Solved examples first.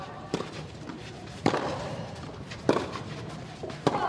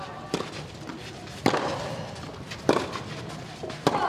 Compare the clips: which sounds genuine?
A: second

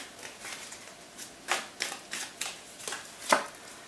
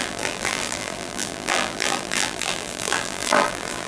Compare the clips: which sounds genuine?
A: first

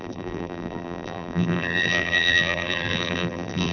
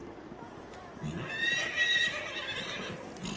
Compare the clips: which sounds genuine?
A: second